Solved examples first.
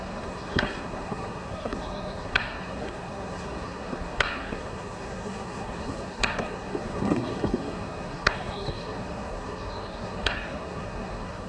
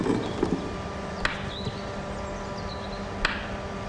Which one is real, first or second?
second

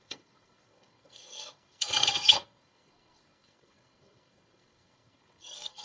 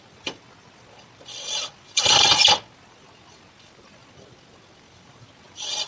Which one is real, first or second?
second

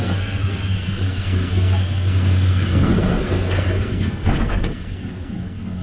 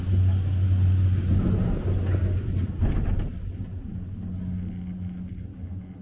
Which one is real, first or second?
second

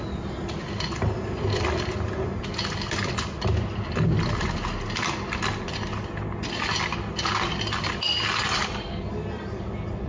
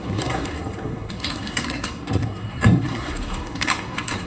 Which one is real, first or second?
first